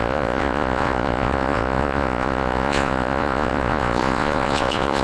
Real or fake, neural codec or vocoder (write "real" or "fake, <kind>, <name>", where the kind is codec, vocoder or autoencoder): fake, vocoder, Vocos